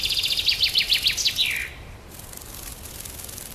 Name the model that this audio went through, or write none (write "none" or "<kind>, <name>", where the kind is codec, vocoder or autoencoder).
none